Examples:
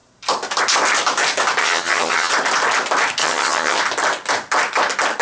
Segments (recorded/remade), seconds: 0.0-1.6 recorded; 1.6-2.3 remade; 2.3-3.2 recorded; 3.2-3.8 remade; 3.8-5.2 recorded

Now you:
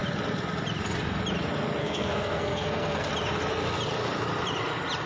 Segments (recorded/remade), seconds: 0.0-1.8 recorded; 1.8-3.1 remade; 3.1-5.1 recorded

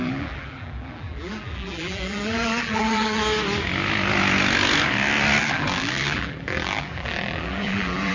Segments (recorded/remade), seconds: 0.0-3.2 remade; 3.2-5.4 recorded; 5.4-8.1 remade

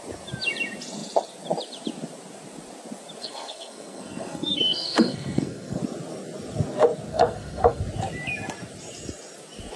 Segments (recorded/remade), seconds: 0.0-3.2 recorded; 3.2-5.8 remade; 5.8-7.1 recorded; 7.1-7.8 remade; 7.8-9.8 recorded